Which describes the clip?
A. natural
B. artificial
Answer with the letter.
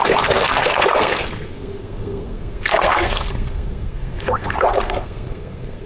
B